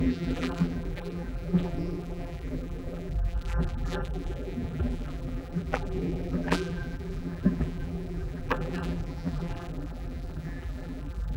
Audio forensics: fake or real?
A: fake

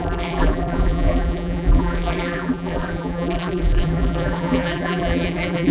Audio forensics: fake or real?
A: fake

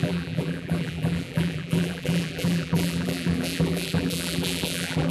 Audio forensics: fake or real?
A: fake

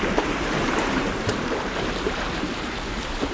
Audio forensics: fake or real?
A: fake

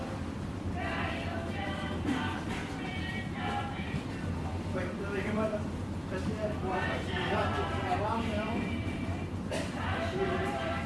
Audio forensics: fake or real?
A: fake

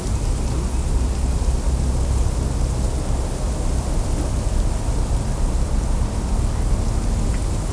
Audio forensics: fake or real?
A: real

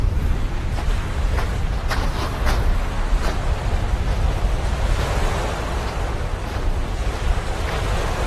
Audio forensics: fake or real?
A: fake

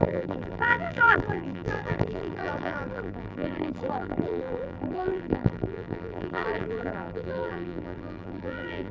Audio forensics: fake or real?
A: fake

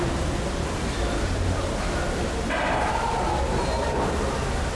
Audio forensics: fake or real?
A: real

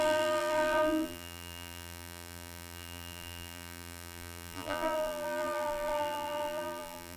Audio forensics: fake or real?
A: fake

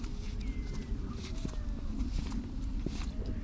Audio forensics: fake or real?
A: fake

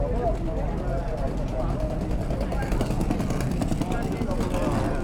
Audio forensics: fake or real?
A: real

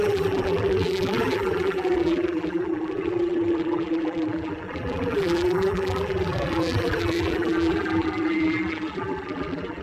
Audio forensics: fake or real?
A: fake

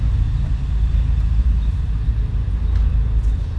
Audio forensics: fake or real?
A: real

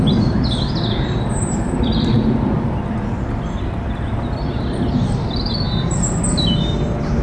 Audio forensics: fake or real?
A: fake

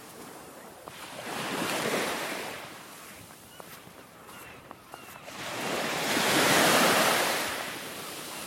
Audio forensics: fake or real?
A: fake